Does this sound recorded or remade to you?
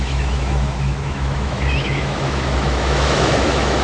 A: remade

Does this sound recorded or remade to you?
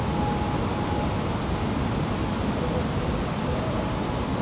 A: recorded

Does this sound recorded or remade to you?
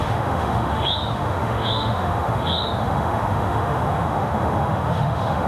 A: remade